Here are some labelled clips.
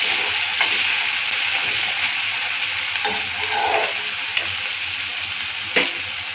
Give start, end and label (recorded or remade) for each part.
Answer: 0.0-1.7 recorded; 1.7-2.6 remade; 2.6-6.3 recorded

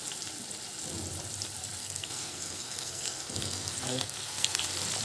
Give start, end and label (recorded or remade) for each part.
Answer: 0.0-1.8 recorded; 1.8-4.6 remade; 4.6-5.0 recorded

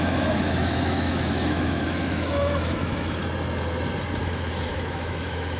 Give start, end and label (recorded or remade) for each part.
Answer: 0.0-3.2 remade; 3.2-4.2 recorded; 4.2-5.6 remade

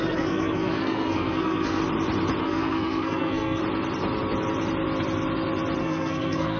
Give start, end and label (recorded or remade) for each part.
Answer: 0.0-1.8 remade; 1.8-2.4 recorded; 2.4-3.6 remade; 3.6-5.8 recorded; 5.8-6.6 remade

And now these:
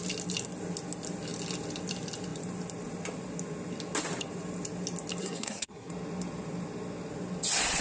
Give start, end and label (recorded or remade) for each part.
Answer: 0.0-5.2 recorded; 5.2-5.9 remade; 5.9-7.8 recorded